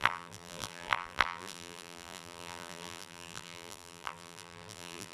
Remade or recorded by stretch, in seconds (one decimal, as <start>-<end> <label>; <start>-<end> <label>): 0.0-5.1 remade

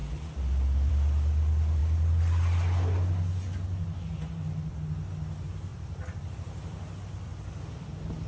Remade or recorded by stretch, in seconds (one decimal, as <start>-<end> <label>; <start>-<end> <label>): 0.0-5.7 recorded; 5.7-6.3 remade; 6.3-8.3 recorded

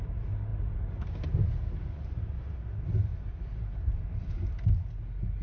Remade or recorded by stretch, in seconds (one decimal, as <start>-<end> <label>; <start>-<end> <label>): 0.0-3.1 recorded; 3.1-3.7 remade; 3.7-5.4 recorded